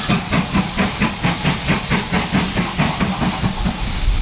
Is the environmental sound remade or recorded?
recorded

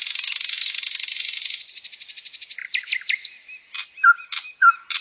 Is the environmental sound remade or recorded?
recorded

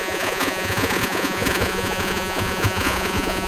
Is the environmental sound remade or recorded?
remade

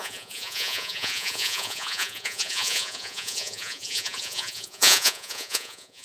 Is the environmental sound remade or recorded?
remade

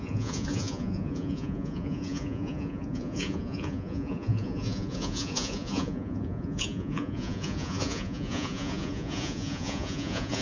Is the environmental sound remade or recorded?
remade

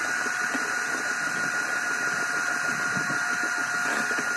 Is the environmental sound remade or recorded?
recorded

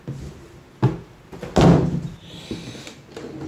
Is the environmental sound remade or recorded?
recorded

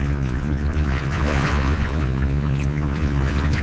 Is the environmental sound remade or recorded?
remade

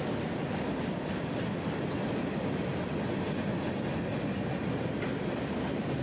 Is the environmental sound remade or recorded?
recorded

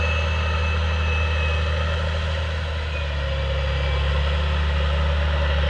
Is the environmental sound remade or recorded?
recorded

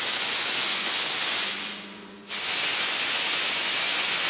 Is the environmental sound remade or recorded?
remade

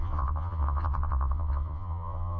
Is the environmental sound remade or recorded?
remade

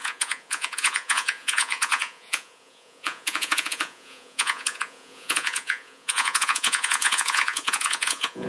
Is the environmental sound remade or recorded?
remade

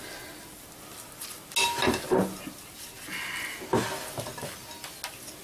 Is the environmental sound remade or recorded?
recorded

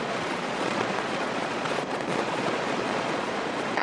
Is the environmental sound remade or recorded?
remade